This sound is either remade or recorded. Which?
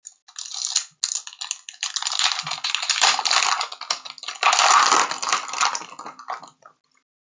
recorded